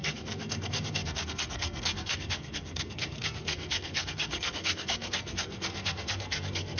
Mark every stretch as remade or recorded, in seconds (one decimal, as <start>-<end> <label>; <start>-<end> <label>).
0.0-6.8 remade